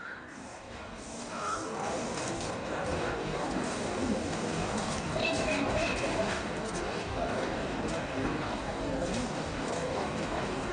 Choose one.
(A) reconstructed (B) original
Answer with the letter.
A